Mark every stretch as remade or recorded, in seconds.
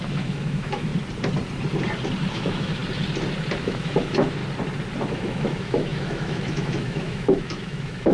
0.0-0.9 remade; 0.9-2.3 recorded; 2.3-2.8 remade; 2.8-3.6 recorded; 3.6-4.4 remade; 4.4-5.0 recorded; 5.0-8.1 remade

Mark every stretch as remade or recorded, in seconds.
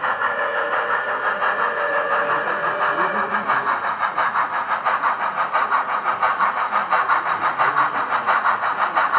0.0-9.2 remade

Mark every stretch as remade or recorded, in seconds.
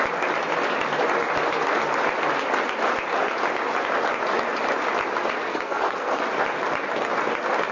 0.0-5.5 recorded; 5.5-6.2 remade; 6.2-7.7 recorded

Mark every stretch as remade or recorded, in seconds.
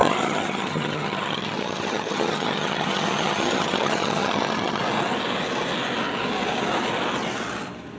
0.0-4.8 remade; 4.8-8.0 recorded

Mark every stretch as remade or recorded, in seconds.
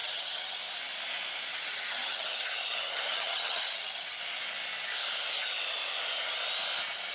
0.0-0.6 remade; 0.6-1.5 recorded; 1.5-4.2 remade; 4.2-7.1 recorded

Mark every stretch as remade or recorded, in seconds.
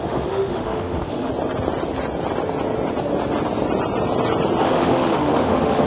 0.0-1.3 remade; 1.3-4.6 recorded; 4.6-5.9 remade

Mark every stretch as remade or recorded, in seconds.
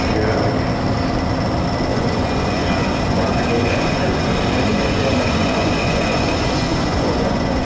0.0-1.9 recorded; 1.9-4.3 remade; 4.3-4.7 recorded; 4.7-7.6 remade